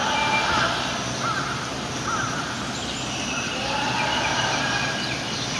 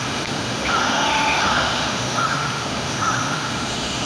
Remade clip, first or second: second